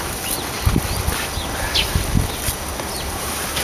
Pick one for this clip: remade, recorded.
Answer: recorded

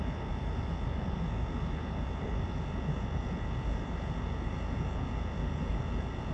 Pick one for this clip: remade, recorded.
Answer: remade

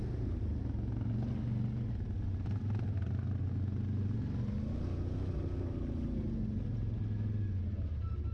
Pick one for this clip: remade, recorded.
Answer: recorded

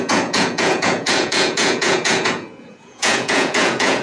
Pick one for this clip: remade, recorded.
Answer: remade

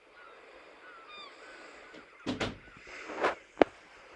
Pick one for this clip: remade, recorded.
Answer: recorded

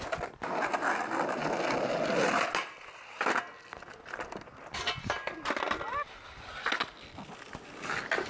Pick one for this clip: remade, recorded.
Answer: recorded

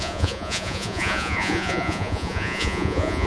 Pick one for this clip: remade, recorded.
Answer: remade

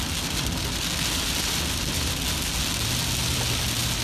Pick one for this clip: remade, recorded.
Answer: recorded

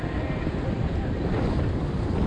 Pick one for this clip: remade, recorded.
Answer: recorded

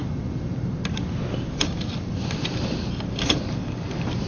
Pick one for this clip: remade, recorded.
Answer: recorded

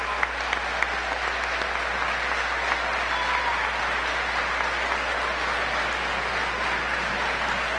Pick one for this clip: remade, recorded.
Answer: recorded